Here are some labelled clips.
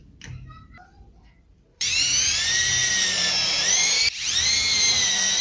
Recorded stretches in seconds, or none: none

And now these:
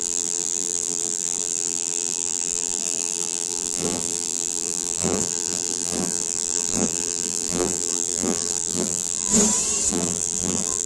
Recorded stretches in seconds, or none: 9.3-9.9

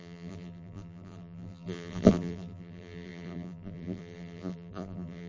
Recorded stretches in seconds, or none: none

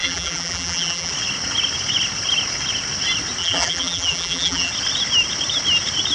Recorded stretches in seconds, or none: 1.1-3.4; 4.7-6.1

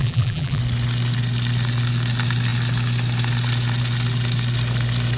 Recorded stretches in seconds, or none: 0.6-5.2

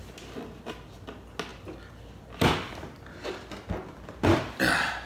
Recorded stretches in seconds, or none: 0.0-5.1

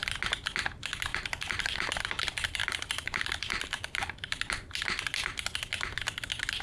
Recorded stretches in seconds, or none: 0.0-1.1; 1.9-2.6; 4.4-6.6